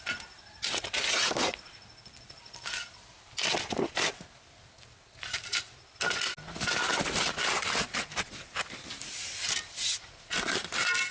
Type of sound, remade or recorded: recorded